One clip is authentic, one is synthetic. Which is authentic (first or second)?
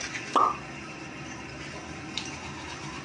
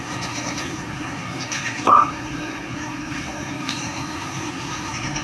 first